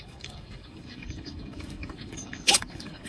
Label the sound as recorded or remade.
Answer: remade